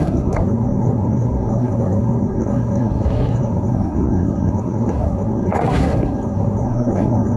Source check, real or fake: fake